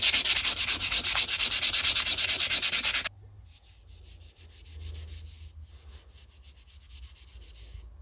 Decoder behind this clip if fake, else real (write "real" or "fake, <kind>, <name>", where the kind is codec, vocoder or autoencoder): real